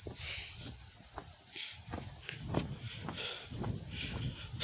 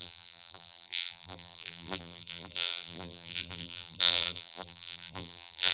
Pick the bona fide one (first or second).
first